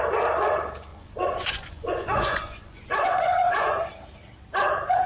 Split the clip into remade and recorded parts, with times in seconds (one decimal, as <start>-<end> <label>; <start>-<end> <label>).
0.0-0.9 recorded; 0.9-3.9 remade; 3.9-5.1 recorded